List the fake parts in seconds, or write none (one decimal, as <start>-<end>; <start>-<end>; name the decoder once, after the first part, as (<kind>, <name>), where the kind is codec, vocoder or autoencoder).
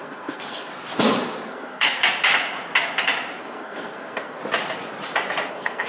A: 0.0-0.7 (codec, SNAC); 1.5-2.0; 3.4-4.4; 5.5-5.9